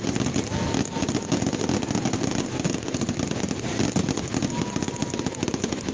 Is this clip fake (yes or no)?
no